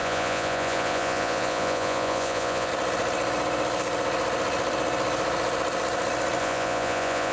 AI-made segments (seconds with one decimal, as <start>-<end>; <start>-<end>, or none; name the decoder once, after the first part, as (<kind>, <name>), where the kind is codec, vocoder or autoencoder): 0.0-2.7 (vocoder, Vocos); 6.4-7.3